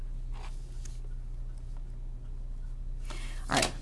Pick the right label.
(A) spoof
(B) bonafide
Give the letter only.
B